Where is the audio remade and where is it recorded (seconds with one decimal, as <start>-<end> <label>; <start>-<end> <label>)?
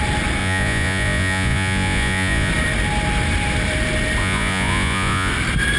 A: 0.0-0.4 recorded; 0.4-2.5 remade; 2.5-4.2 recorded; 4.2-5.3 remade; 5.3-5.8 recorded